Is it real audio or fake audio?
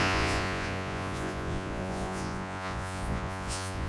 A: fake